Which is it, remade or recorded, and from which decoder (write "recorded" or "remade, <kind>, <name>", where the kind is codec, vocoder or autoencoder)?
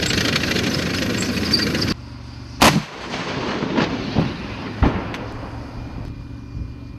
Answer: recorded